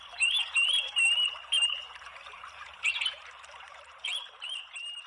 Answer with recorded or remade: remade